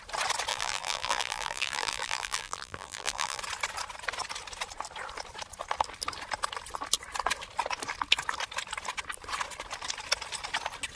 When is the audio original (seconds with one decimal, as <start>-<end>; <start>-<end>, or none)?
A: 0.0-0.5; 3.4-11.0